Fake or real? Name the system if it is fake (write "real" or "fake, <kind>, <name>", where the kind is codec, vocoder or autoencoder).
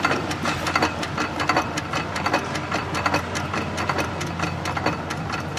real